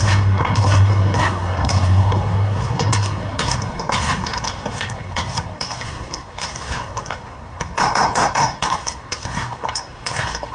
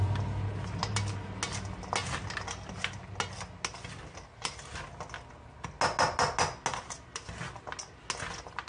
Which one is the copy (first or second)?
first